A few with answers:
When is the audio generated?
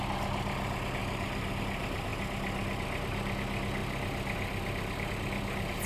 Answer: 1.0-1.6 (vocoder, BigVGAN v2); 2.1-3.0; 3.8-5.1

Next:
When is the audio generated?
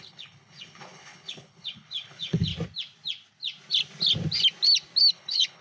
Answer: 0.0-2.5 (codec, HILCodec); 5.1-5.6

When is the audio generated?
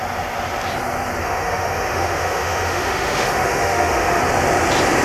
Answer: 1.2-4.2 (autoencoder, DAC-VAE)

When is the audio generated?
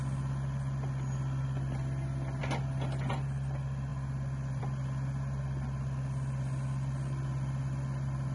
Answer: none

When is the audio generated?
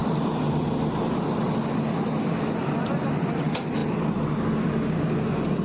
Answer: none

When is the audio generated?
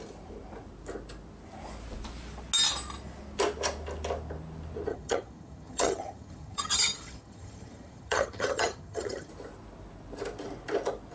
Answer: 4.9-9.3 (vocoder, HiFi-GAN)